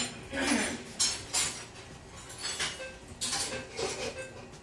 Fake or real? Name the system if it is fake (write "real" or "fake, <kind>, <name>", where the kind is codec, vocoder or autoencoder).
real